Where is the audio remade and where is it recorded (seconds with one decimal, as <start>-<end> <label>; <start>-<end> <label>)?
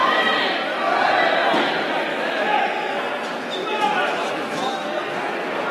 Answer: 0.0-2.1 recorded; 2.1-3.0 remade; 3.0-4.2 recorded; 4.2-4.9 remade; 4.9-5.7 recorded